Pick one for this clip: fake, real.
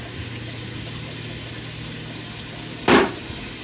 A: real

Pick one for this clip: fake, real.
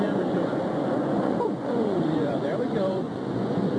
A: fake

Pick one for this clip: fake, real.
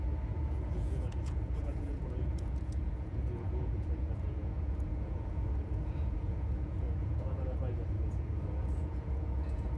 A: fake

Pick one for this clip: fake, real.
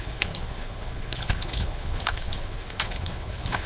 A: fake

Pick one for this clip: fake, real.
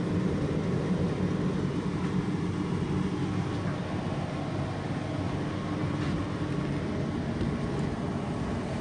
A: real